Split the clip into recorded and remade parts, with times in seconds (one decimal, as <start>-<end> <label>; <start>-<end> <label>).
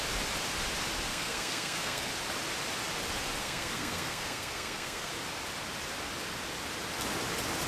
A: 0.0-1.1 recorded; 1.1-2.1 remade; 2.1-3.4 recorded; 3.4-5.1 remade; 5.1-7.7 recorded